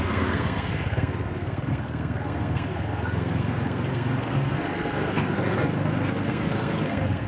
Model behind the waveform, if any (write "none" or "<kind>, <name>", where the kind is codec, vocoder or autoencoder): codec, SNAC